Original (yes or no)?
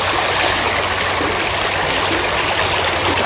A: yes